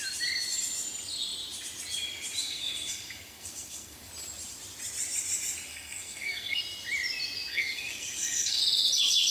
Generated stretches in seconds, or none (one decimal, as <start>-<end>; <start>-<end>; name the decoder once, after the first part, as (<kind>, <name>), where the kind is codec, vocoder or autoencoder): 2.4-4.1 (codec, SNAC); 5.7-6.6; 7.5-8.6